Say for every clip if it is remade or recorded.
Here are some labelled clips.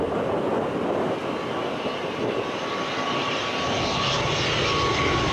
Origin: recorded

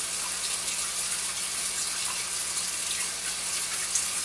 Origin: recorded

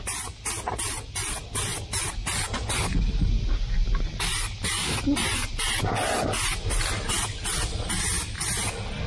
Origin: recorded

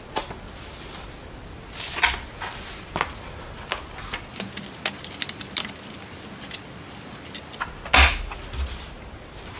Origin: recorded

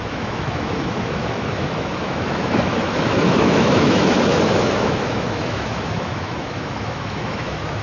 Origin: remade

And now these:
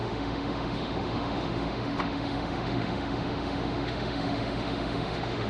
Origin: remade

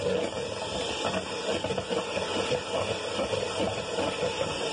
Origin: recorded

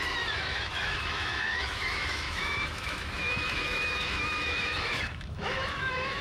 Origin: remade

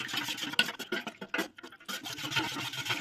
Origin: recorded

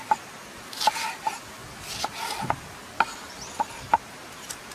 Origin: recorded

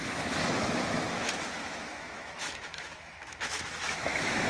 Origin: remade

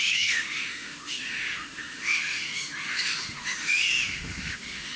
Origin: remade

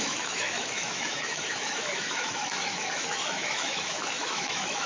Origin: remade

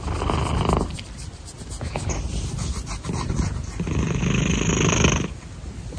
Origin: recorded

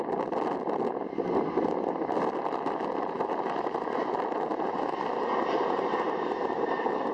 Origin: recorded